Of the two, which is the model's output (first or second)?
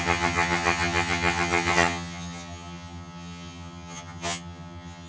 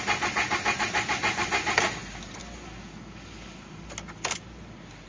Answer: first